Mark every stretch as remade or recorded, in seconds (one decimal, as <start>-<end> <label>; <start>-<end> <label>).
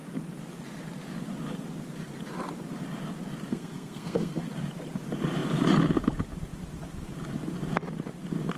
0.0-3.5 recorded; 3.5-4.4 remade; 4.4-8.6 recorded